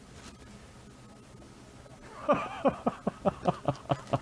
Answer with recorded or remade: recorded